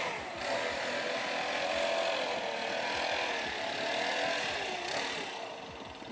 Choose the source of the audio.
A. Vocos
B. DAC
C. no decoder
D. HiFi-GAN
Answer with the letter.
C